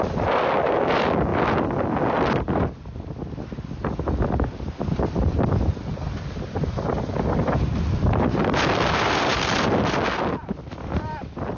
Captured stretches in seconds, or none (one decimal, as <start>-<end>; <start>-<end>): 0.0-11.6